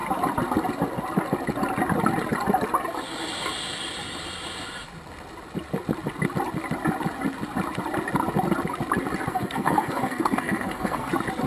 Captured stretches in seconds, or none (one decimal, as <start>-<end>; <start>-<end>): 0.0-9.3; 11.1-11.5